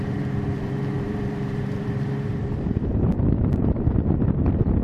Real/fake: fake